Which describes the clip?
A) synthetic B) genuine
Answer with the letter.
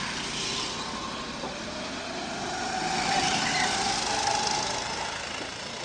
B